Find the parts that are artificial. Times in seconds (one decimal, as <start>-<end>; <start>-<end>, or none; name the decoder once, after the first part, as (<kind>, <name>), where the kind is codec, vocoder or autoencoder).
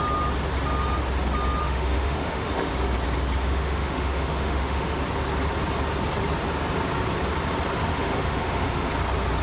1.6-2.7 (autoencoder, DAC-VAE); 3.4-5.0; 7.9-8.9